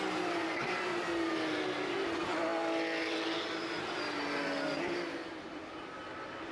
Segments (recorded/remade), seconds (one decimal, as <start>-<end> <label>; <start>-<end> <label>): 0.0-6.5 recorded